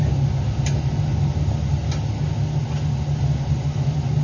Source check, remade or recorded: recorded